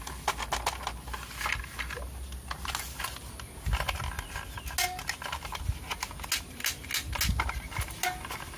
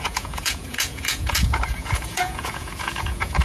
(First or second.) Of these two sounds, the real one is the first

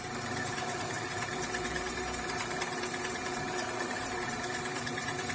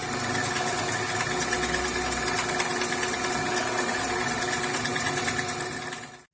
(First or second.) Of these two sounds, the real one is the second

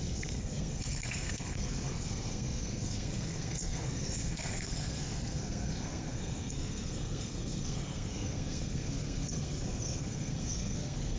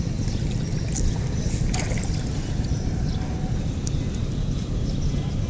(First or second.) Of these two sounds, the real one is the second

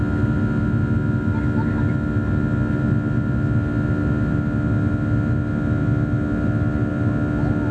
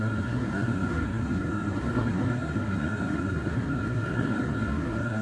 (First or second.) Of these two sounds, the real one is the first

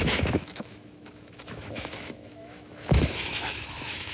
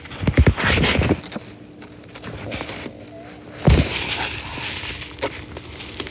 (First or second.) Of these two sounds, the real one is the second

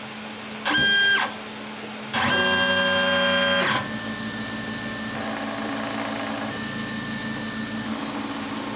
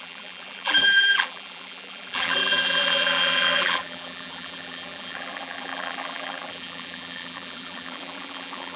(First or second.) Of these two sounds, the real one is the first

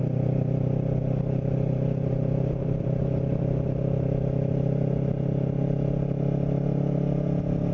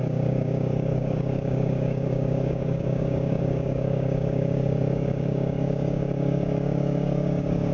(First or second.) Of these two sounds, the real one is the first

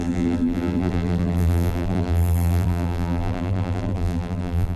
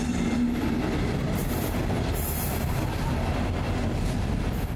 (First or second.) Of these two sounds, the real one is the second